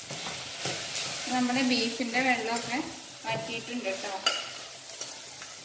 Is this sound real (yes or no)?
yes